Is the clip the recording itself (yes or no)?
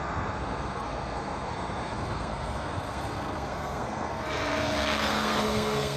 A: no